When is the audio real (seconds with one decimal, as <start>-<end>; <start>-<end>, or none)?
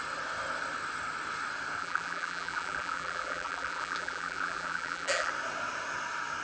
0.0-1.8; 5.3-6.4